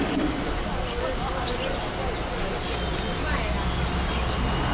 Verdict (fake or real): real